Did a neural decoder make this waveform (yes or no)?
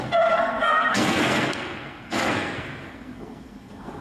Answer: yes